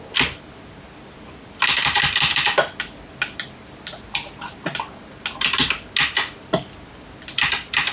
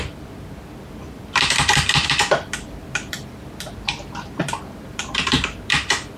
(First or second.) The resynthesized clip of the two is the second